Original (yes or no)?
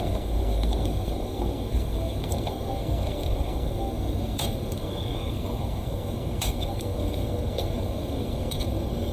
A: no